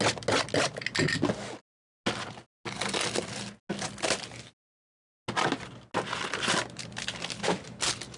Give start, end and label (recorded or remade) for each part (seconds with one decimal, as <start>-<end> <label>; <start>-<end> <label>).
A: 0.0-8.2 recorded